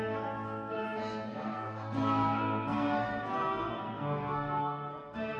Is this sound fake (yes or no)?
yes